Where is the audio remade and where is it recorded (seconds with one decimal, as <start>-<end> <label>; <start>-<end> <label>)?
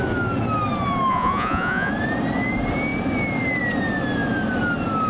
0.0-1.1 recorded; 1.1-1.9 remade; 1.9-5.1 recorded